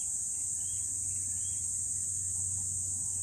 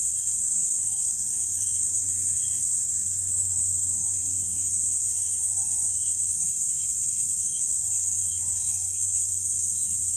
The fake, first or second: second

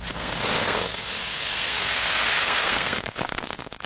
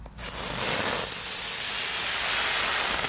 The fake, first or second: first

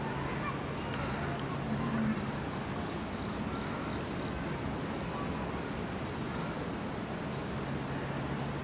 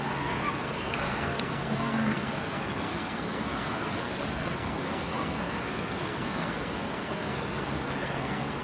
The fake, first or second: second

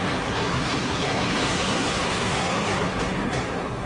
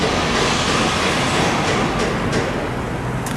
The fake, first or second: first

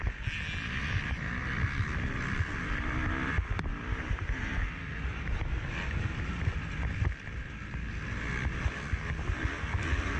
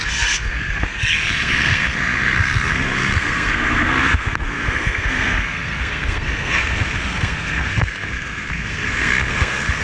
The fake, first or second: second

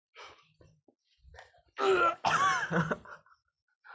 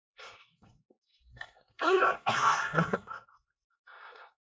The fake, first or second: second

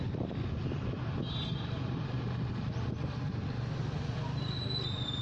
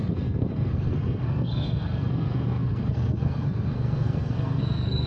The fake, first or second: second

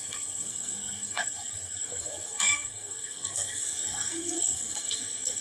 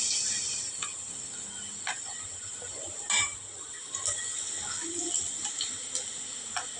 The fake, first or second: first